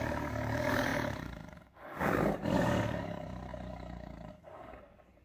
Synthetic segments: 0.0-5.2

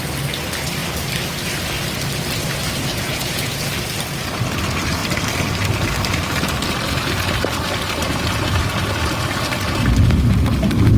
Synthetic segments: 2.9-3.7

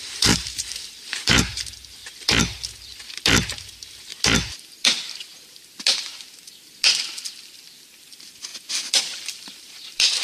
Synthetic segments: 0.0-2.0; 3.6-4.1; 8.0-8.5; 9.0-10.2

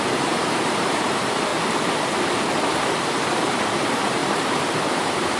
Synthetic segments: 0.0-1.5; 3.1-5.4